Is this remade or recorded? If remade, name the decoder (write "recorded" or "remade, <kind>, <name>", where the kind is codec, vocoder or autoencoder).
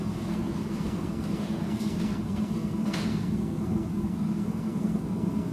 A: remade, codec, SNAC